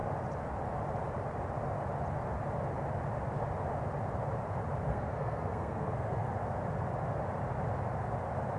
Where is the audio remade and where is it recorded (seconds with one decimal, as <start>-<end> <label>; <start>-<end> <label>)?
0.0-4.9 recorded; 4.9-6.3 remade; 6.3-8.6 recorded